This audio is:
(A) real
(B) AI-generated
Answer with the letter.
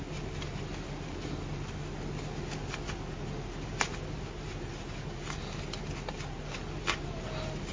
A